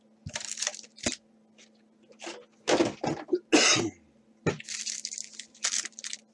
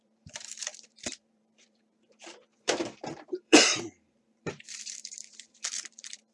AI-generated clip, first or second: second